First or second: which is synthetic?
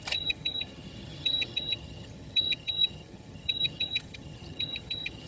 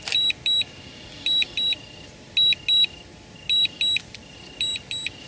first